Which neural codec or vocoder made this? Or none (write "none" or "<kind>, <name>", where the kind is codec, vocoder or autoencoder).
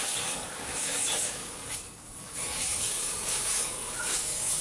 codec, DAC